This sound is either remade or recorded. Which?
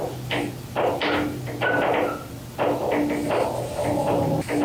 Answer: recorded